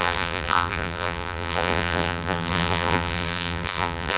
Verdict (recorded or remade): remade